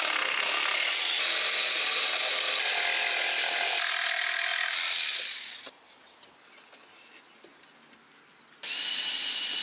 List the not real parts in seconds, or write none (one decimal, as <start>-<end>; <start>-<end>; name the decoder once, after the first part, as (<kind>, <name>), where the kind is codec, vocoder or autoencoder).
none